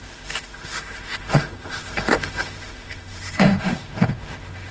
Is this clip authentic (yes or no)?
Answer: no